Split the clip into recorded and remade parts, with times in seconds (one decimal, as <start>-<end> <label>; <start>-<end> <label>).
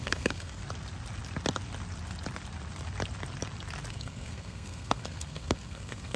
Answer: 0.0-0.6 remade; 0.6-3.9 recorded; 3.9-6.2 remade